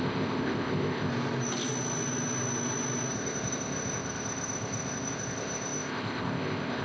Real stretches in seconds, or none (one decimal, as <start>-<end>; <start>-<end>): 1.1-3.1